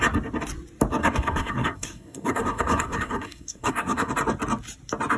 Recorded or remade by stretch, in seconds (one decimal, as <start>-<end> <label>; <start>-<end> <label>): 0.0-1.0 recorded; 1.0-4.1 remade; 4.1-5.2 recorded